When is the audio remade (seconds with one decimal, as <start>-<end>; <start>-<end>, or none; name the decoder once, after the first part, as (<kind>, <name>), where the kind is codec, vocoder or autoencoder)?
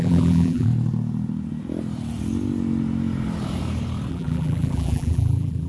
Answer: 0.0-0.7 (vocoder, BigVGAN v2); 4.1-5.7